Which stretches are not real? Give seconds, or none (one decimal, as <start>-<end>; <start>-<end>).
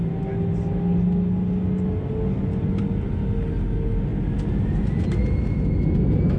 none